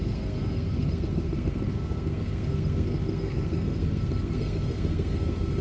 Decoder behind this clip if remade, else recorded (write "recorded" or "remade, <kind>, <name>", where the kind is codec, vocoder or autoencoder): remade, codec, SNAC